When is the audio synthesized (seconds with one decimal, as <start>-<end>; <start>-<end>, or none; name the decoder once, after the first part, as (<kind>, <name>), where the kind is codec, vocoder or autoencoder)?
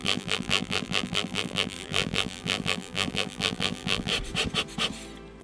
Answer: 0.0-4.1 (vocoder, BigVGAN v2)